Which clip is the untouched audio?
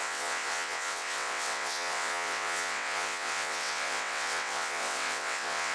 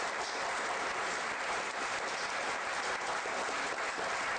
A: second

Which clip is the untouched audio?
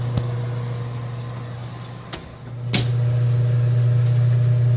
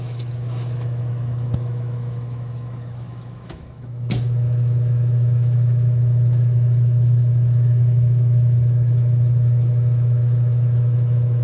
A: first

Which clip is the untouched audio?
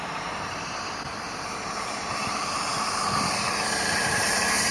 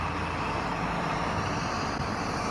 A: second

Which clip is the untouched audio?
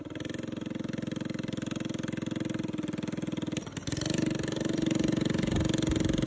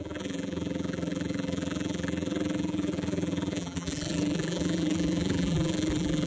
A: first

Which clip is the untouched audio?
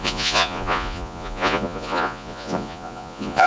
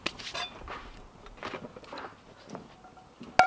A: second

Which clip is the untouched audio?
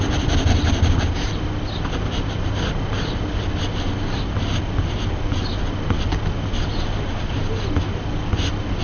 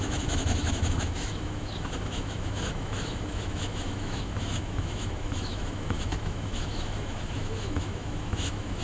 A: first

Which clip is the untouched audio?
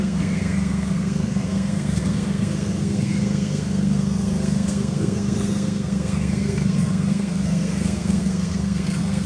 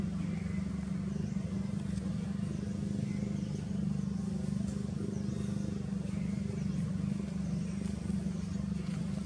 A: second